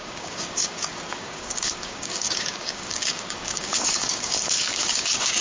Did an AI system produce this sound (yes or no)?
yes